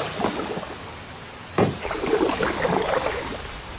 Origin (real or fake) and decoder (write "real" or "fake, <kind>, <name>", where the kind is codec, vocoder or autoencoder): real